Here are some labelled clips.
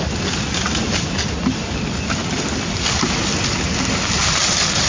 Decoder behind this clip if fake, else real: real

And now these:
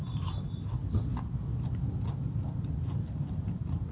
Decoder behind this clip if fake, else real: real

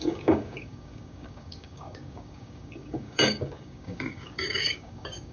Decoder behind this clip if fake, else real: fake, codec, DAC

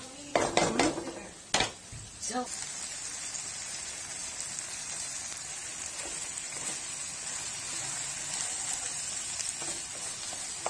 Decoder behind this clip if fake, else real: real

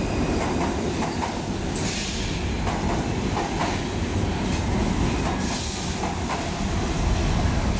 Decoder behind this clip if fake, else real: real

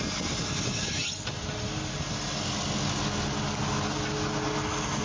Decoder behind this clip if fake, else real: real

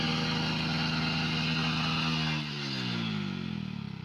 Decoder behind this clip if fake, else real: real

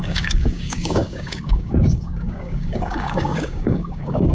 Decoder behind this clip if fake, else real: fake, codec, DAC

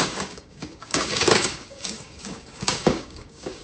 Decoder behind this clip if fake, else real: fake, codec, DAC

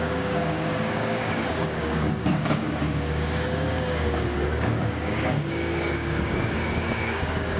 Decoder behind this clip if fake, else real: fake, codec, DAC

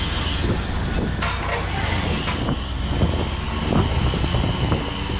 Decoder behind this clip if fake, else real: real